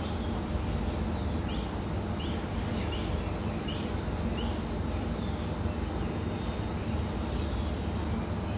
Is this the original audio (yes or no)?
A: yes